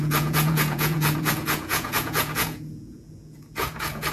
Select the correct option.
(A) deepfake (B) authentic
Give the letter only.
A